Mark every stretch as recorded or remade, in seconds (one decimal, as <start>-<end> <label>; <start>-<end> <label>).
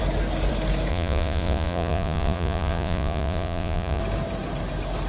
0.0-0.9 recorded; 0.9-4.0 remade; 4.0-5.1 recorded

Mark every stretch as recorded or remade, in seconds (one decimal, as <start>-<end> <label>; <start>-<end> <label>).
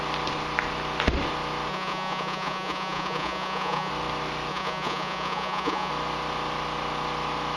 0.0-1.7 recorded; 1.7-3.9 remade; 3.9-4.5 recorded; 4.5-5.9 remade; 5.9-7.6 recorded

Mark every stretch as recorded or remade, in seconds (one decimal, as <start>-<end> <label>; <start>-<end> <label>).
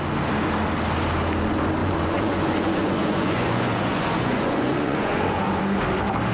0.0-1.8 recorded; 1.8-5.6 remade; 5.6-6.3 recorded